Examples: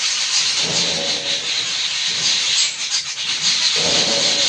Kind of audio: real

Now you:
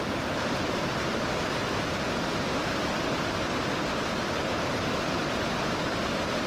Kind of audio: real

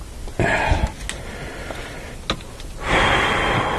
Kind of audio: real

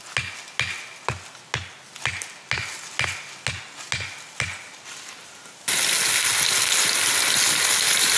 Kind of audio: real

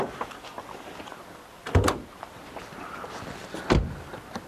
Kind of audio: real